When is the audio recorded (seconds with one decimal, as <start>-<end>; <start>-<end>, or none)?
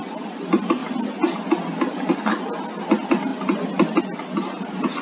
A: 0.0-5.0